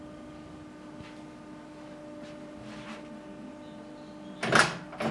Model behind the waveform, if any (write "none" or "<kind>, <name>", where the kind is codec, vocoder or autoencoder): none